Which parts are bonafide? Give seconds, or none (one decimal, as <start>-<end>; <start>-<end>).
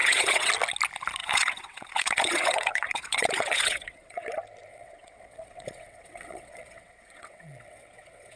0.5-1.2; 4.3-4.7